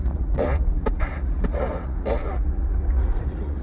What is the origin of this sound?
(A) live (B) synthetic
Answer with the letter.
B